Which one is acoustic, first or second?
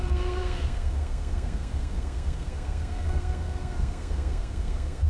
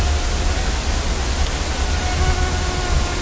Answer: second